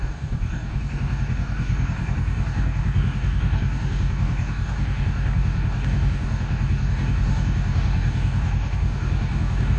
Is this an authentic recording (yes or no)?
no